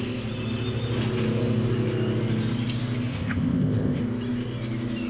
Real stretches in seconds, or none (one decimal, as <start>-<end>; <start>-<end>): 0.0-3.1; 4.0-5.1